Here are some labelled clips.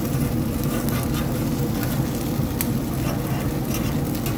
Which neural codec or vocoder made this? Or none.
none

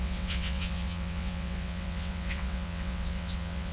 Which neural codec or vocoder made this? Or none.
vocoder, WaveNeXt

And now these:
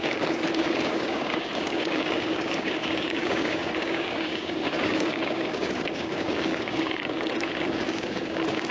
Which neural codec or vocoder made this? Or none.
codec, DAC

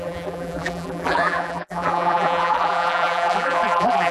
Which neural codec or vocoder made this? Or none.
vocoder, BigVGAN v2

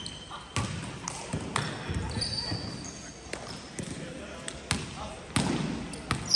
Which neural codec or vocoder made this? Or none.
none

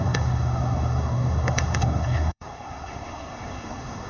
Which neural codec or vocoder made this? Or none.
codec, SNAC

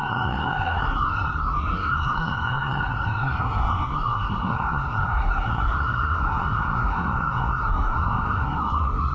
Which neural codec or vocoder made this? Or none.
codec, SNAC